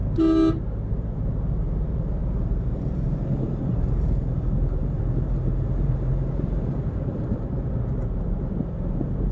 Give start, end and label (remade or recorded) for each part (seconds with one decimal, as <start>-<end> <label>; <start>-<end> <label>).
0.0-0.9 recorded; 0.9-9.3 remade